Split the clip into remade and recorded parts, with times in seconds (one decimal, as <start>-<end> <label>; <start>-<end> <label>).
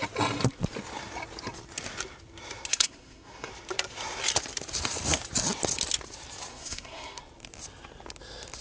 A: 0.0-2.7 recorded; 2.7-3.5 remade; 3.5-6.5 recorded; 6.5-7.2 remade; 7.2-8.6 recorded